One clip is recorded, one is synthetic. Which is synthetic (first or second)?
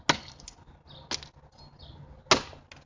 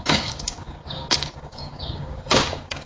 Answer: second